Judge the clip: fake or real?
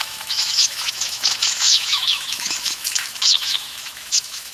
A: fake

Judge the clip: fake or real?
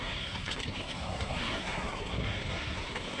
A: fake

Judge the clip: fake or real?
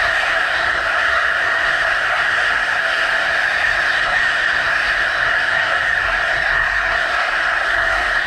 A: fake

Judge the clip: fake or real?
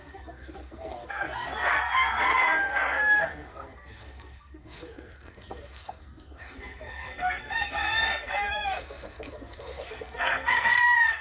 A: fake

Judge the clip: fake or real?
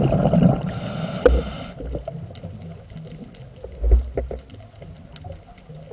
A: real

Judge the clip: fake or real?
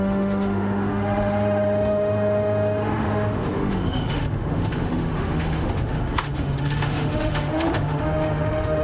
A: fake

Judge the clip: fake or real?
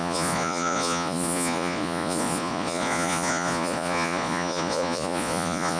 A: fake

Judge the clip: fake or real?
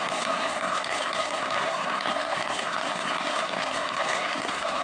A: fake